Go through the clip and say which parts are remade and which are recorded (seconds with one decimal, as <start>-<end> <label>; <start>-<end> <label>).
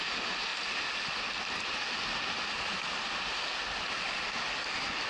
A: 0.0-5.1 recorded